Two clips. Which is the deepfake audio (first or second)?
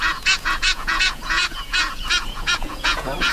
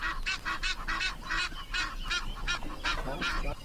first